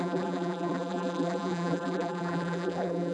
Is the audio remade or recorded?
remade